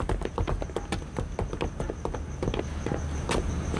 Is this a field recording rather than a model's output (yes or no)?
yes